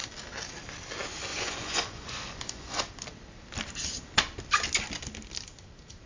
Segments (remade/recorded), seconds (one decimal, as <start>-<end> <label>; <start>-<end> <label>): 0.0-1.3 recorded; 1.3-2.8 remade; 2.8-6.1 recorded